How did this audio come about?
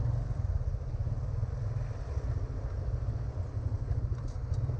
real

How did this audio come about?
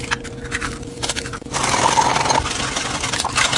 real